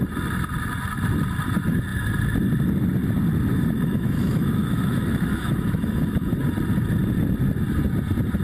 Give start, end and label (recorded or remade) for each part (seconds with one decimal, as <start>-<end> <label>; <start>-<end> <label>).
0.0-3.5 recorded; 3.5-6.3 remade; 6.3-8.4 recorded